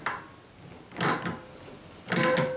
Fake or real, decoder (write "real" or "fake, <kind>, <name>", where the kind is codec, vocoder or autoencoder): real